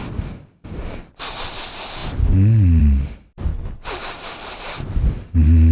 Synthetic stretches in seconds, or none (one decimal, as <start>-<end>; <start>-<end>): 3.5-4.0